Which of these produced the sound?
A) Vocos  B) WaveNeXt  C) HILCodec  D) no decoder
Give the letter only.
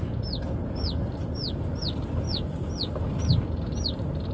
D